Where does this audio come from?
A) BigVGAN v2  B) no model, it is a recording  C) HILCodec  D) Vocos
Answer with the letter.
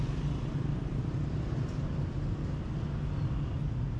B